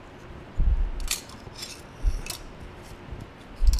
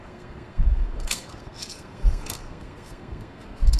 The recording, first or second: first